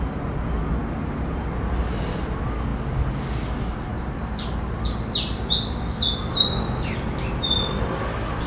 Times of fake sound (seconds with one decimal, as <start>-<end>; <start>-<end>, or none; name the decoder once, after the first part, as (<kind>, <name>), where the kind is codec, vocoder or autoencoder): 0.8-2.1 (vocoder, BigVGAN v2)